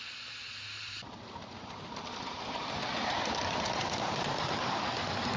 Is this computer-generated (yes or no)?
no